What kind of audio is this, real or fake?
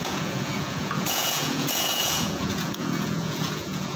fake